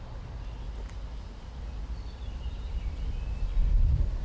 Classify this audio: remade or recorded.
recorded